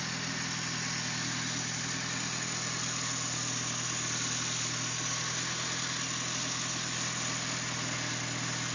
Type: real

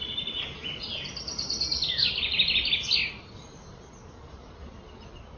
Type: real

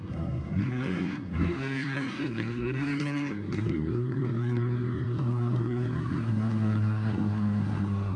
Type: fake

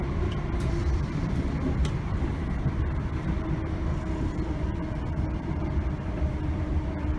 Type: fake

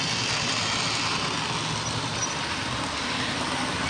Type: real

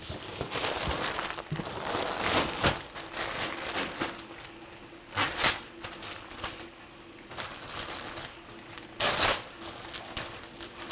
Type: real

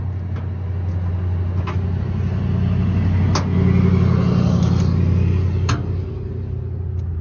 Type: real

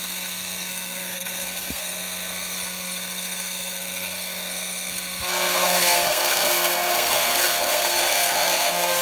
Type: fake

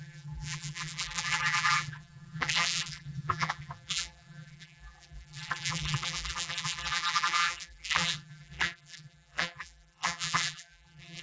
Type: fake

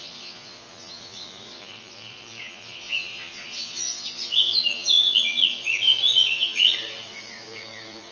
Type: fake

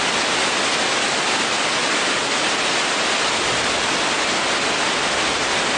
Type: real